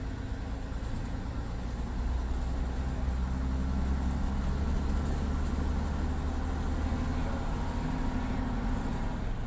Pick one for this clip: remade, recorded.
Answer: recorded